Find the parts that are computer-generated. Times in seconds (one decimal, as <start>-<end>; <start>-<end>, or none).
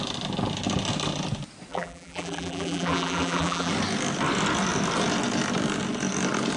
1.7-3.7